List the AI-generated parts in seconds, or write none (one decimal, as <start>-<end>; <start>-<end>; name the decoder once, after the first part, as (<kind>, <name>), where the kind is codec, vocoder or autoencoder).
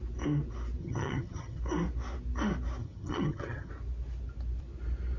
0.8-1.6 (vocoder, HiFi-GAN); 2.8-3.7